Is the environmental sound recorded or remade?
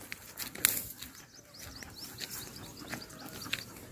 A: recorded